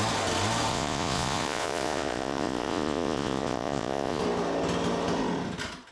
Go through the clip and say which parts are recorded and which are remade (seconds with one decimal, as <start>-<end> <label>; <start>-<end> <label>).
0.0-0.7 recorded; 0.7-4.2 remade; 4.2-5.9 recorded